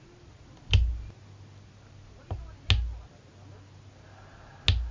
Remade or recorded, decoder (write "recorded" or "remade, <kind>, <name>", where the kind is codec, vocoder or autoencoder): recorded